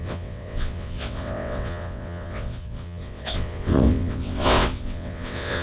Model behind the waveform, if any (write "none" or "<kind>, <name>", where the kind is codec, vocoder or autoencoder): vocoder, WaveNeXt